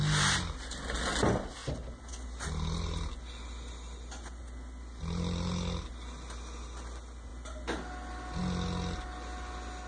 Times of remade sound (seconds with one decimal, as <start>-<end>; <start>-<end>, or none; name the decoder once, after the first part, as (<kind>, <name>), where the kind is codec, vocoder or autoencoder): none